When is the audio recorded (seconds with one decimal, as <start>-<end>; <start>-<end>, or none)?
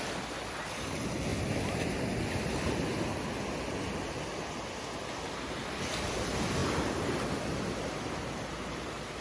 0.0-9.2